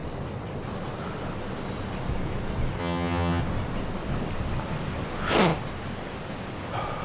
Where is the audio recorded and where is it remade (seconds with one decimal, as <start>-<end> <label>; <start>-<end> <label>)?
0.0-2.8 recorded; 2.8-3.4 remade; 3.4-7.0 recorded